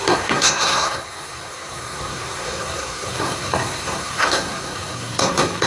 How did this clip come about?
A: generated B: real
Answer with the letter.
A